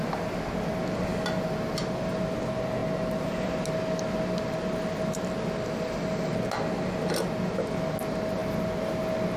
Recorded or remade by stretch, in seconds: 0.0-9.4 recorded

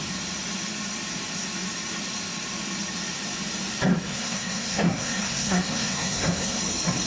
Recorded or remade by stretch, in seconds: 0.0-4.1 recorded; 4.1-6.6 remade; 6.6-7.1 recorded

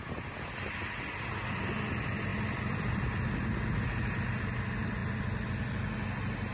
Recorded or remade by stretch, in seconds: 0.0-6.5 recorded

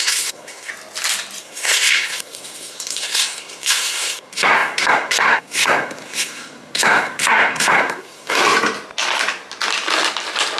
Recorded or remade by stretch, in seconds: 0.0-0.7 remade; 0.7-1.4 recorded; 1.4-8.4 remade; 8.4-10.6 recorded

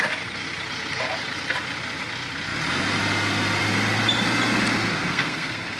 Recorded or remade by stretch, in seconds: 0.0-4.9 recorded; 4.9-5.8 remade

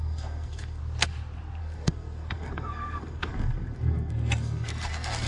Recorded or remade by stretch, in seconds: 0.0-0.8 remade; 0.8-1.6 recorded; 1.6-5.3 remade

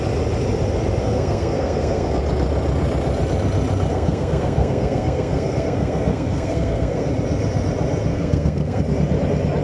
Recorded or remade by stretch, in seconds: 0.0-1.0 recorded; 1.0-2.2 remade; 2.2-3.9 recorded; 3.9-7.1 remade; 7.1-8.1 recorded; 8.1-8.8 remade; 8.8-9.6 recorded

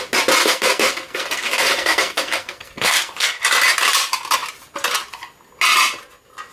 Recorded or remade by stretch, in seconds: 0.0-0.4 recorded; 0.4-3.4 remade; 3.4-6.5 recorded